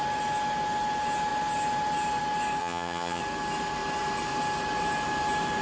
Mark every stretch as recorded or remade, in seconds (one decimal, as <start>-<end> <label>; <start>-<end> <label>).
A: 0.0-2.6 recorded; 2.6-3.2 remade; 3.2-5.6 recorded